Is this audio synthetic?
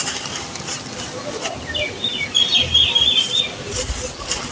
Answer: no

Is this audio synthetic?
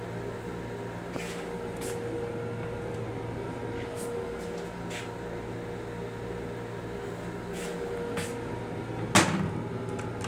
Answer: no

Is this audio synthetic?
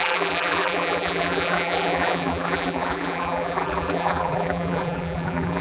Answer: yes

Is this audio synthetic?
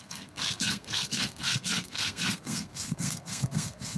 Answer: yes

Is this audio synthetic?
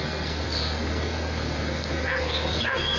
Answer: yes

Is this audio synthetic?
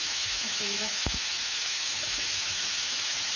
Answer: yes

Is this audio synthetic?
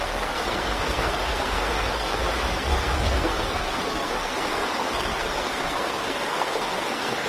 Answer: yes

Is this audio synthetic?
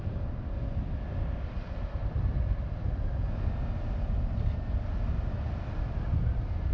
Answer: no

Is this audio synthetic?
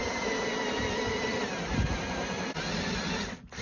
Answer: no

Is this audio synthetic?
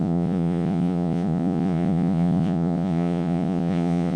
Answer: yes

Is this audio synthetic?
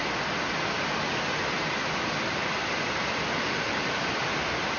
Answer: no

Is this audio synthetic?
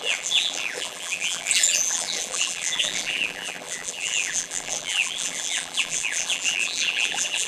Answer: yes